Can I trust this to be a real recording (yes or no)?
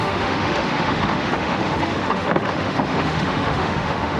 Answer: no